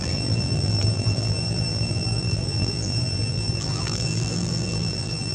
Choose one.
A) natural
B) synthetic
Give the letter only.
B